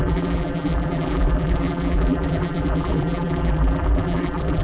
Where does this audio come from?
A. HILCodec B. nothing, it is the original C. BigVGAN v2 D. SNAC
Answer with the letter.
C